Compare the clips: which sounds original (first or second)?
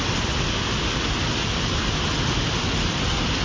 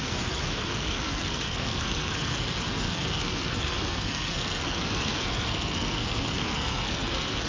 first